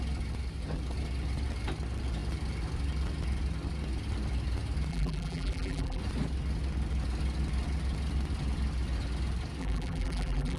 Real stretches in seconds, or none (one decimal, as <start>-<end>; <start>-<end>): 0.0-4.9; 6.0-9.6